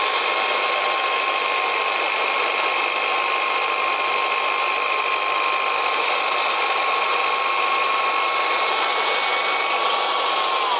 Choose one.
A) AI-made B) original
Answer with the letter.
B